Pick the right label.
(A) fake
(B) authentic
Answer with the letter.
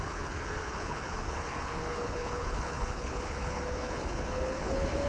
A